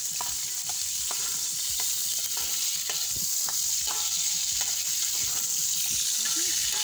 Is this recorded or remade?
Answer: recorded